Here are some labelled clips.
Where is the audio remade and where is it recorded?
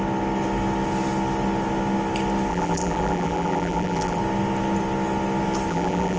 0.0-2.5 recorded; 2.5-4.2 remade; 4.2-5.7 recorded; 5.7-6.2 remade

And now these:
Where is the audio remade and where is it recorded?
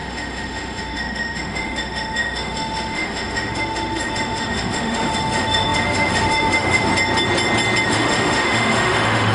0.0-6.9 remade; 6.9-7.9 recorded; 7.9-9.3 remade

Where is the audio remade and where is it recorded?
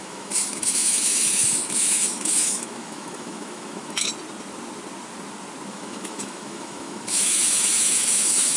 0.0-4.1 remade; 4.1-5.7 recorded; 5.7-8.6 remade